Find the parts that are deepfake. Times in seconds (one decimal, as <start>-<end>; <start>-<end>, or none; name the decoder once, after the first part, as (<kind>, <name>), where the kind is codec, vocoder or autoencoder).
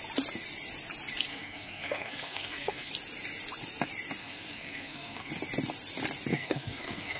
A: 1.3-2.9 (codec, SNAC); 4.2-5.3; 6.3-7.2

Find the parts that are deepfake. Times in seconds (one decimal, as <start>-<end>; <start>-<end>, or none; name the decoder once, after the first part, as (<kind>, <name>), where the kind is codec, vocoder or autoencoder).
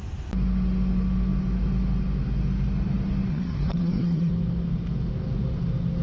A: 3.3-4.3 (codec, SNAC)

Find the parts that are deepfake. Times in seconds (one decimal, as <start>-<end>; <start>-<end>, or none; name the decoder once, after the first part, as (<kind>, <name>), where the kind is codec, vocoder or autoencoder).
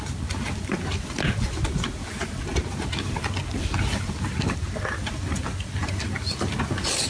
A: none